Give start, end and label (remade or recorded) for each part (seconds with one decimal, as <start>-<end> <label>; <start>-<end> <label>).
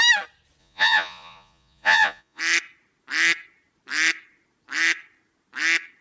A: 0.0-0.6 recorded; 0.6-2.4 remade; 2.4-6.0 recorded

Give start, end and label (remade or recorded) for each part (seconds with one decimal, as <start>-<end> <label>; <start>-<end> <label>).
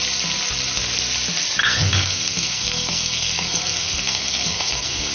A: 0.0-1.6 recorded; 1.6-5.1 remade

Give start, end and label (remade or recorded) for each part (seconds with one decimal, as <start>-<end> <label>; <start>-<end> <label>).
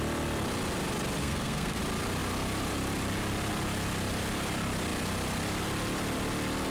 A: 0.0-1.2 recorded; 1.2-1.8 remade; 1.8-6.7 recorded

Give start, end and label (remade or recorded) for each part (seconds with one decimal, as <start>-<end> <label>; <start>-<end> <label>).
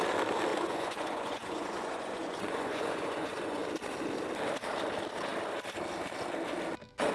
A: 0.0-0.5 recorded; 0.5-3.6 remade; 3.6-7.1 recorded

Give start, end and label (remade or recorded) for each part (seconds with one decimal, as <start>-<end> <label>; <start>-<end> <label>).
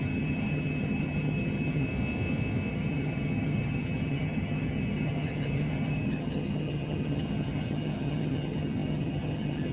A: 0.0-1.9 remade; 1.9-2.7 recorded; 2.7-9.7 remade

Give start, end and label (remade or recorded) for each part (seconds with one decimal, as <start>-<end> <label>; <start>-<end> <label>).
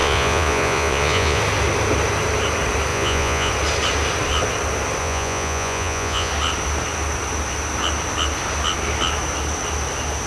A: 0.0-1.4 remade; 1.4-2.9 recorded; 2.9-3.5 remade; 3.5-5.0 recorded; 5.0-6.3 remade; 6.3-10.3 recorded